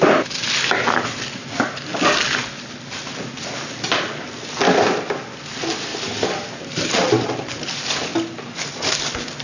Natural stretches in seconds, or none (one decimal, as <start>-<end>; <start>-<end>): 0.0-5.9; 7.5-9.4